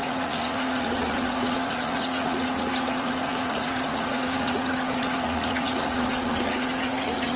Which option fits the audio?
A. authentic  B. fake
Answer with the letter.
B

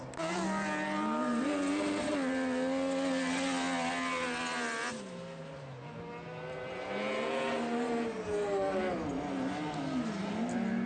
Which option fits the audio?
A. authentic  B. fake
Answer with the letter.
A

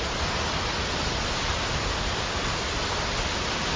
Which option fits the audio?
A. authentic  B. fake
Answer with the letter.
A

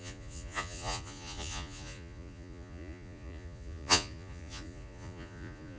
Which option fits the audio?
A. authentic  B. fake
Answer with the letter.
B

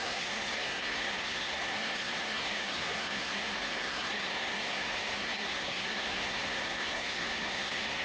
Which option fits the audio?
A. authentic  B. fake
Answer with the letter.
B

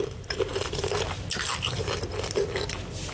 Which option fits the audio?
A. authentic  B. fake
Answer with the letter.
B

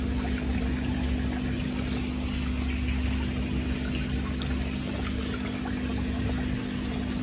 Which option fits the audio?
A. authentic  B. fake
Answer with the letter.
A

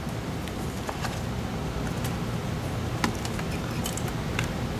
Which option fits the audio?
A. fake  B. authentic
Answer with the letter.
B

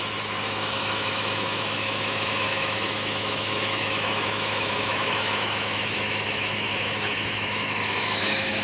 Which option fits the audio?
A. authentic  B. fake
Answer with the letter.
B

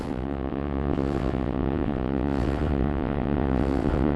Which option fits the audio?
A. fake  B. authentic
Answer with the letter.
A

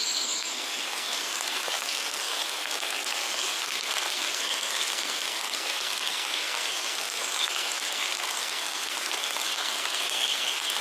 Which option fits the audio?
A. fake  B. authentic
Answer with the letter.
A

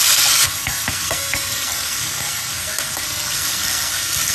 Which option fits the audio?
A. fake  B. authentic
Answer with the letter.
A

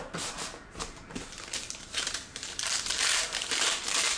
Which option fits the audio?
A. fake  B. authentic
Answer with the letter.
A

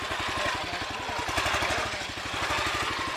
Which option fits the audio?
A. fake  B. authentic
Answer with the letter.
B